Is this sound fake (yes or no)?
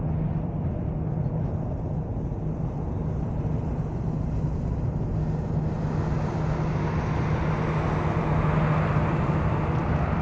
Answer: no